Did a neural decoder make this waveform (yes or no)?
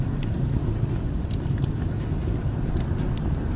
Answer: no